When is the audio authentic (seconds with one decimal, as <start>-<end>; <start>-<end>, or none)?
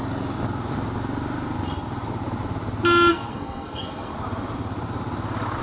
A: 0.0-3.1; 4.1-5.6